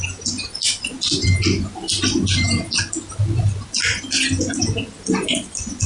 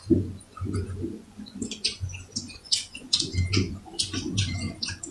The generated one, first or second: second